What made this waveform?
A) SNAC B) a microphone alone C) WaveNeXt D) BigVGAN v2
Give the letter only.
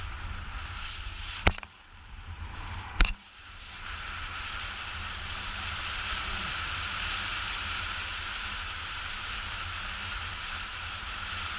D